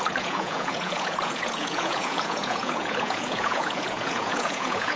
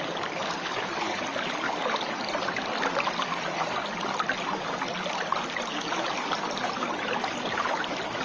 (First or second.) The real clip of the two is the second